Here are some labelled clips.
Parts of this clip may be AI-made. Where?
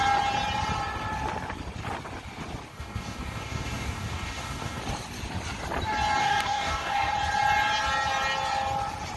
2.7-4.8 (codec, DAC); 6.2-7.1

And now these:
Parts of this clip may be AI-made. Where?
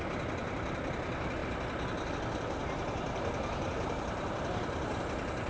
none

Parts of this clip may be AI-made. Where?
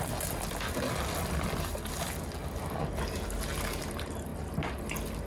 none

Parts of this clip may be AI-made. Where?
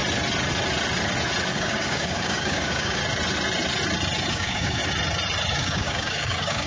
1.5-3.0 (codec, DAC); 4.3-4.8; 5.5-6.7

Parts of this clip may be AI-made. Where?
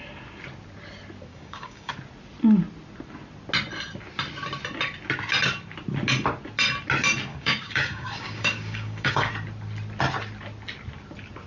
1.3-1.9 (codec, DAC); 7.3-9.3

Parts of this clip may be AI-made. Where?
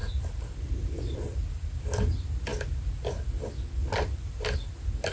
none